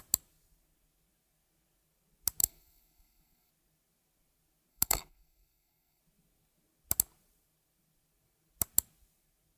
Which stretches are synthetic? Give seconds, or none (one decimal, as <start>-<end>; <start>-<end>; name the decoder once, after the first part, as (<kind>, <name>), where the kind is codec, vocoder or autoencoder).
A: 2.4-3.5 (codec, SNAC); 4.7-6.0